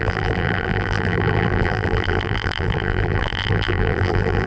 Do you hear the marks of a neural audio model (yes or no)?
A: yes